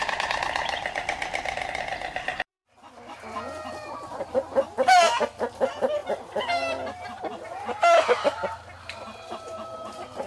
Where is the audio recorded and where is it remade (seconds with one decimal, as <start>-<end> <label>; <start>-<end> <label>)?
0.0-10.3 recorded